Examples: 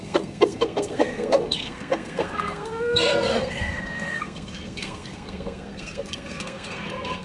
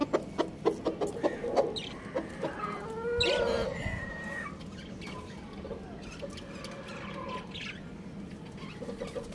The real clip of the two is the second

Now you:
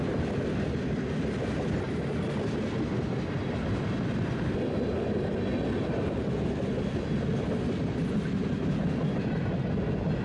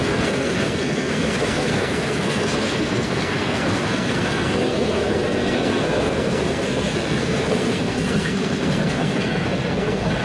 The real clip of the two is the first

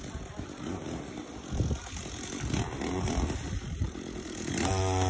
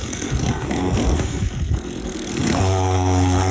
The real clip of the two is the first